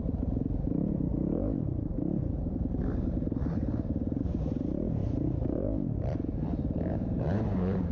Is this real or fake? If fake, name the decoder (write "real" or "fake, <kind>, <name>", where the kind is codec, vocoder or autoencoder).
fake, vocoder, BigVGAN v2